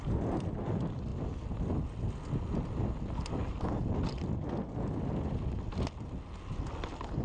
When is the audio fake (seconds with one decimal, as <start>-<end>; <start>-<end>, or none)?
none